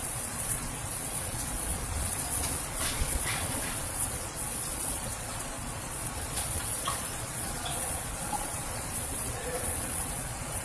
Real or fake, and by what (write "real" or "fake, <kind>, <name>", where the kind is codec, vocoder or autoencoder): fake, vocoder, Vocos